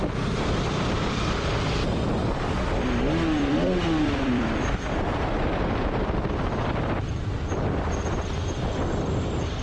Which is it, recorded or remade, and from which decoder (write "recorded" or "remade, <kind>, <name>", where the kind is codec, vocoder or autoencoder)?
remade, vocoder, BigVGAN v2